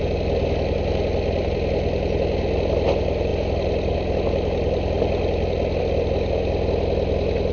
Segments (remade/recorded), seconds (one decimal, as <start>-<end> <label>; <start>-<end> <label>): 0.0-7.5 recorded